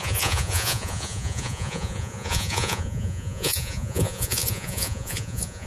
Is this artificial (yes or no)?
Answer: yes